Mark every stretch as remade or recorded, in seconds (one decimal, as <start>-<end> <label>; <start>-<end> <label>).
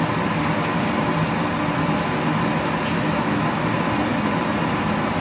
0.0-5.2 recorded